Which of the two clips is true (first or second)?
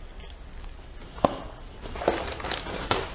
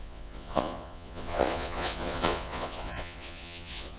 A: first